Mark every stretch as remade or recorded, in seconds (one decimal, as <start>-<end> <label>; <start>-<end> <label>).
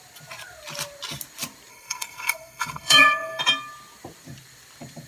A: 0.0-1.7 recorded; 1.7-3.4 remade; 3.4-5.1 recorded